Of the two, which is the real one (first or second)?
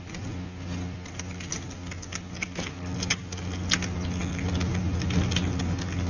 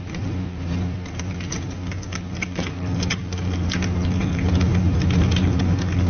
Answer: first